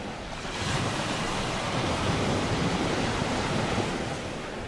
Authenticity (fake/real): real